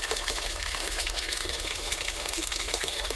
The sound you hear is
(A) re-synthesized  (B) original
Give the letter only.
A